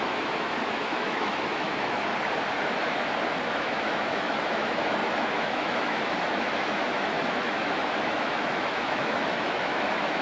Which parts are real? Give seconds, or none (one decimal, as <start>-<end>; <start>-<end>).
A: 2.1-3.5